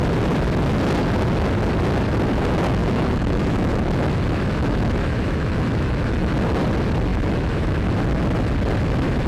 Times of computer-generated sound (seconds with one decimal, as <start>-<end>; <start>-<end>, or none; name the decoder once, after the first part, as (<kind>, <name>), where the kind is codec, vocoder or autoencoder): 2.8-6.3 (autoencoder, DAC-VAE); 7.1-7.9